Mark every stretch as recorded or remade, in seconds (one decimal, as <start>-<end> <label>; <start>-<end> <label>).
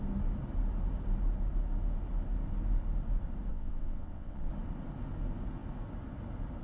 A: 0.0-3.5 recorded; 3.5-4.5 remade; 4.5-6.6 recorded